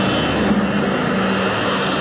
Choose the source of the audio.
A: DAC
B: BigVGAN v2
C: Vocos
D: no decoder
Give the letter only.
D